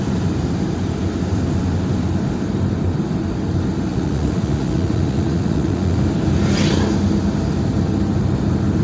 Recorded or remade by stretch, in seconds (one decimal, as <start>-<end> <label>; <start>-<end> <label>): 0.0-3.9 recorded; 3.9-6.0 remade; 6.0-8.8 recorded